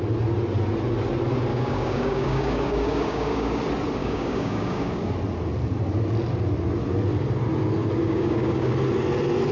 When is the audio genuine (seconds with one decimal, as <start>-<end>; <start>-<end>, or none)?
0.0-1.5; 3.6-4.0; 5.1-8.0; 8.7-9.5